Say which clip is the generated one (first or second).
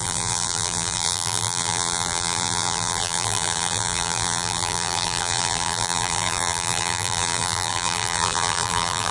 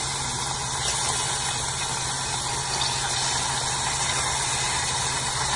first